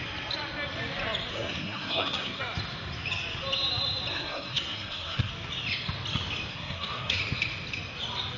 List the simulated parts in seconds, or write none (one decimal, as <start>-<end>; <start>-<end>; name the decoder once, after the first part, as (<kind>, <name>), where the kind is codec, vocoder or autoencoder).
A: 1.3-2.4 (codec, SNAC); 4.1-5.3; 6.5-7.2